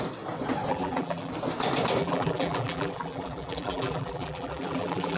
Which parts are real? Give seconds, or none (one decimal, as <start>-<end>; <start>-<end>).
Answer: 0.0-0.7; 1.3-2.0